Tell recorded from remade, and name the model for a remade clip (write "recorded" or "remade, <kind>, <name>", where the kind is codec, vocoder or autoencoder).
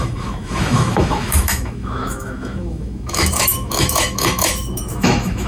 remade, autoencoder, DAC-VAE